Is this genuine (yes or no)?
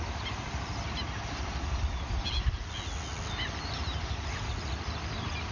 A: yes